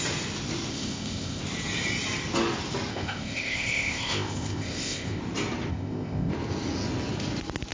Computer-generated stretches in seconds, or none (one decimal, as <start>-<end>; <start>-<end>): 0.7-1.4; 2.9-5.2; 5.7-6.3